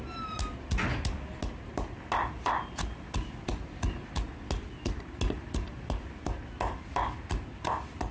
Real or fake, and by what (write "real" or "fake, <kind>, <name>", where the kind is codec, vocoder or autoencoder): real